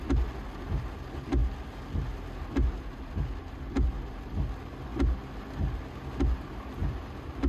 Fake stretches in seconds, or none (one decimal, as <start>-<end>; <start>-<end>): none